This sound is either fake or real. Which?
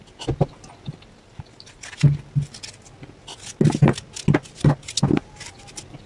real